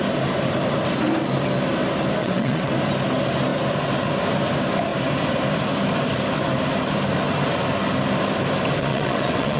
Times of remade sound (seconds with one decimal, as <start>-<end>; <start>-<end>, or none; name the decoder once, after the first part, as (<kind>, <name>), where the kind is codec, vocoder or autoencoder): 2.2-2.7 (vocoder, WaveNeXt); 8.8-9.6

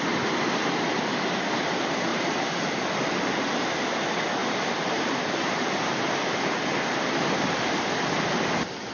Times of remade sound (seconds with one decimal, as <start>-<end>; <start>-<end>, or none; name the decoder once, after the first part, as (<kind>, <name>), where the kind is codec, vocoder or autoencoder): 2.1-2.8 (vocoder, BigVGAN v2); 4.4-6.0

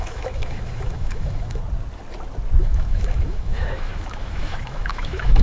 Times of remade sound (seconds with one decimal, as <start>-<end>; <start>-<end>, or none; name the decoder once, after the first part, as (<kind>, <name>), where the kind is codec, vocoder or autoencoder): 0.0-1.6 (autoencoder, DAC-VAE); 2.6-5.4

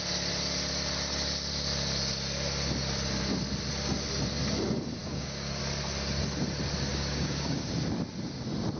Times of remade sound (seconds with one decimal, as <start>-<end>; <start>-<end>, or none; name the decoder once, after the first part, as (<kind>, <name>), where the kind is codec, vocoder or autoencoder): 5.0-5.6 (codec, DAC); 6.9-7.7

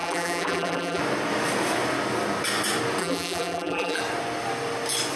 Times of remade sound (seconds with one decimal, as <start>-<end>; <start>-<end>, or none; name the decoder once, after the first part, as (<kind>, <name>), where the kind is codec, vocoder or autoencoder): 0.0-1.0 (vocoder, BigVGAN v2); 3.0-4.0

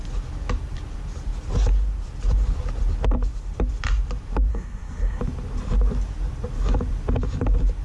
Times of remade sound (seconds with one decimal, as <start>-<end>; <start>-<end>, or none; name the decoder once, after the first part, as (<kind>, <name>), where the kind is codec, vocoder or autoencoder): 4.5-5.2 (codec, SNAC)

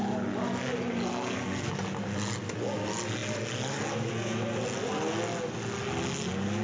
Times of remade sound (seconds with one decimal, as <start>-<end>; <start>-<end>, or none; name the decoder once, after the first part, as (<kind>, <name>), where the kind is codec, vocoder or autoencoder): 1.1-1.7 (codec, SNAC)

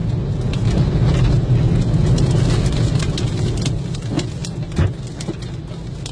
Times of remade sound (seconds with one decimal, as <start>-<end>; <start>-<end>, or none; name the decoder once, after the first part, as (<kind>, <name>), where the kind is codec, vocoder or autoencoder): none